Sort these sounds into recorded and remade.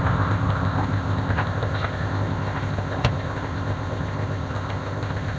remade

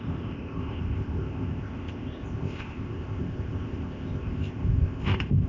remade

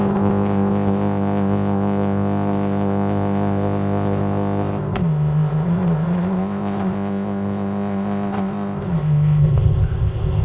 remade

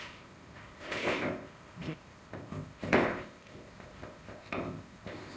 remade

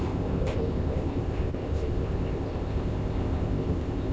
remade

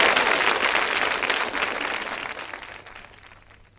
recorded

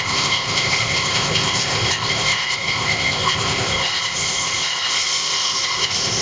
remade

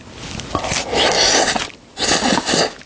recorded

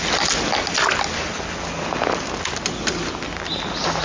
recorded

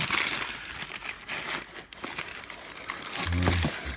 recorded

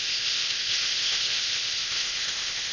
remade